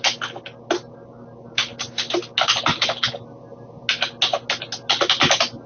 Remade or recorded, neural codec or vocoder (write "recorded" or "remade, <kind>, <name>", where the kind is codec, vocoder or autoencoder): recorded